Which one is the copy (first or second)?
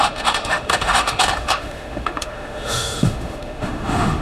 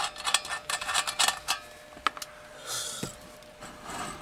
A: first